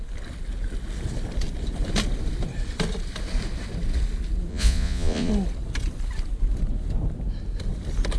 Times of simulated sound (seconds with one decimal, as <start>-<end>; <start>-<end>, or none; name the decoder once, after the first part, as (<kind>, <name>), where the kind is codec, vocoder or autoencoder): 4.5-5.3 (vocoder, Vocos)